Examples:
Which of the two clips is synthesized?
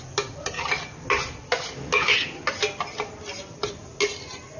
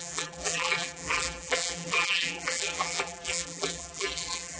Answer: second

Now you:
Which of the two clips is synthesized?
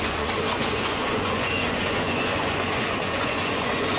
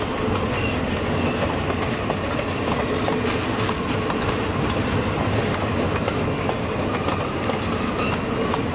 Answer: first